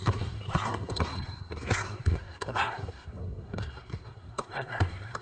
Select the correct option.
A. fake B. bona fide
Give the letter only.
A